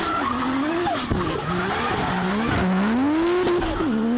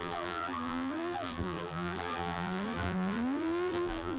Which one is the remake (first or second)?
second